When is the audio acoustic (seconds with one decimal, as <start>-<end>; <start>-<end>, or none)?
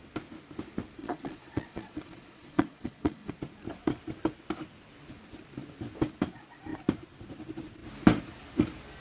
0.0-1.0; 3.3-9.0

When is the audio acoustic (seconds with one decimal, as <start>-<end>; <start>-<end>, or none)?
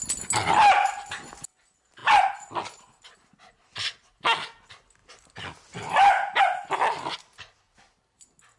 0.0-8.6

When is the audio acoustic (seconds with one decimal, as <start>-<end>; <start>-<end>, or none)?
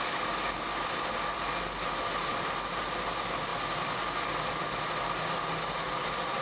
0.0-6.4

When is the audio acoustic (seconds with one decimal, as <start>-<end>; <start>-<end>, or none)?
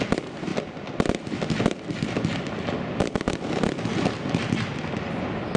0.0-5.6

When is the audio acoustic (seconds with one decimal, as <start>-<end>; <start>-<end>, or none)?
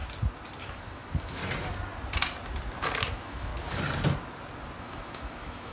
0.0-0.6; 1.4-3.1; 3.5-4.8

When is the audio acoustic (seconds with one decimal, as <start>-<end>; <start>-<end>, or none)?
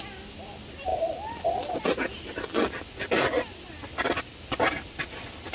0.0-5.5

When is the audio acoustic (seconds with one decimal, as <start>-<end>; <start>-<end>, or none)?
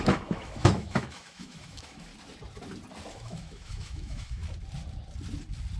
2.1-3.1; 4.4-5.8